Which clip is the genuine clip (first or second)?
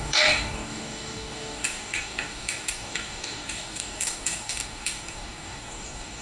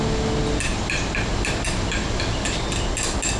second